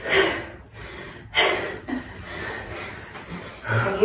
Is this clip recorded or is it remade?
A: recorded